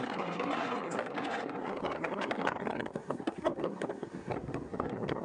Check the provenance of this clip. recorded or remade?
remade